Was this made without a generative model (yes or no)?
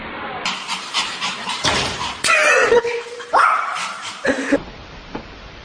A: no